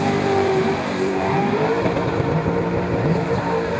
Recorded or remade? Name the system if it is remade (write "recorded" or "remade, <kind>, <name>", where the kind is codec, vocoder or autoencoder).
remade, vocoder, BigVGAN v2